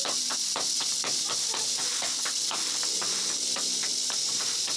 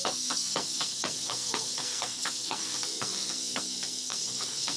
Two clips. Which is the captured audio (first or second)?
first